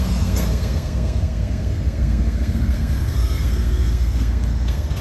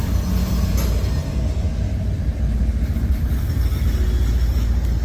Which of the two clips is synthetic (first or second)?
first